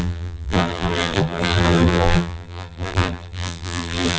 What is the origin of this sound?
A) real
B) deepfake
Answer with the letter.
B